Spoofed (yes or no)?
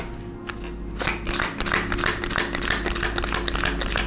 no